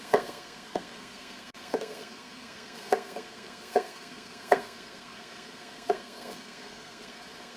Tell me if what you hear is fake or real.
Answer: fake